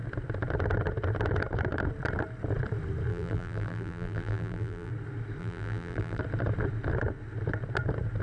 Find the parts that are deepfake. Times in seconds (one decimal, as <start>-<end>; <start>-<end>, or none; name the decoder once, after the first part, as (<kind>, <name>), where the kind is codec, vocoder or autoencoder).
3.1-4.9 (vocoder, BigVGAN v2); 5.4-6.2